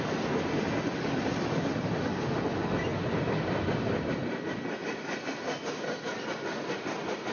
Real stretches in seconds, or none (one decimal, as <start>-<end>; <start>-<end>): 0.0-2.9